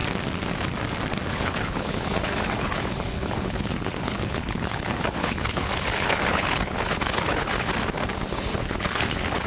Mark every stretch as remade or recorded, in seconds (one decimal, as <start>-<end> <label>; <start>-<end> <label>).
0.0-1.3 recorded; 1.3-7.7 remade; 7.7-8.3 recorded; 8.3-9.5 remade